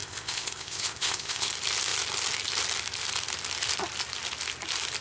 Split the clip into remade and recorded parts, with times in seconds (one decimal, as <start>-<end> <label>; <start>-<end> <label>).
0.0-1.5 remade; 1.5-5.0 recorded